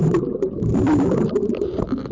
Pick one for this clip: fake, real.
fake